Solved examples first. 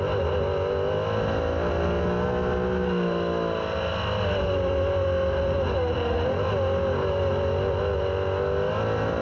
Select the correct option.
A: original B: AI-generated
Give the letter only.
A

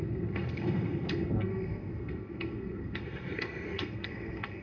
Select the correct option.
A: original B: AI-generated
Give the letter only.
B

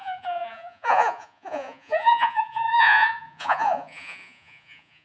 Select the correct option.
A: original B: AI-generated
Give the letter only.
B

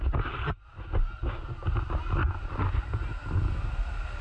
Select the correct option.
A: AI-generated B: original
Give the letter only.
B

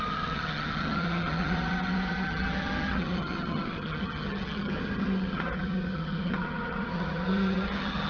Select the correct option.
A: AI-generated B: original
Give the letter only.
A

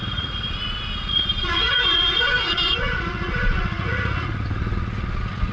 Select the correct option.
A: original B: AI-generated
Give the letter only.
B